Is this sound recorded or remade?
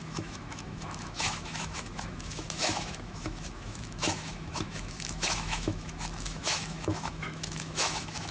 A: remade